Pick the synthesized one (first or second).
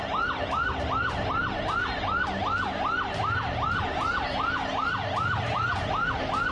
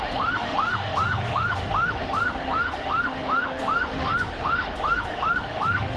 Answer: second